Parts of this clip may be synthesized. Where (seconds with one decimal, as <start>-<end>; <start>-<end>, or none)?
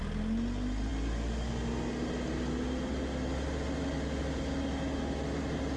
none